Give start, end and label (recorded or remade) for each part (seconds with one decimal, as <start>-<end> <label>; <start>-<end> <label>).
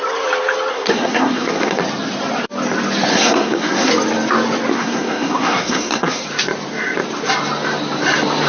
0.0-0.7 recorded; 0.7-1.8 remade; 1.8-3.1 recorded; 3.1-3.9 remade; 3.9-4.7 recorded; 4.7-6.2 remade; 6.2-8.5 recorded